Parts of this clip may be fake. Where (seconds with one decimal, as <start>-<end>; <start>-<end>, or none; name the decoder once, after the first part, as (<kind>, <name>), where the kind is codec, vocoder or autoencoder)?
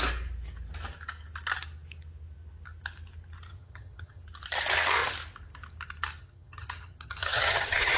3.5-4.2 (vocoder, HiFi-GAN); 6.2-8.0